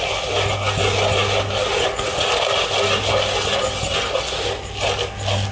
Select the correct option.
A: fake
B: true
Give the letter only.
B